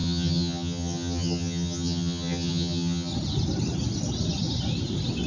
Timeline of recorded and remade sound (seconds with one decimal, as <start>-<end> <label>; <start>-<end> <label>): 0.0-3.1 remade; 3.1-5.3 recorded